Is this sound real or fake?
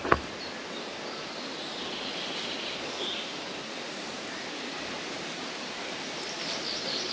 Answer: real